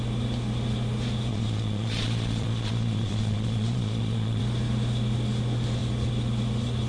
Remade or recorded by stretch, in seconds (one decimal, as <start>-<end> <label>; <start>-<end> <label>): 0.0-1.3 recorded; 1.3-4.4 remade; 4.4-6.9 recorded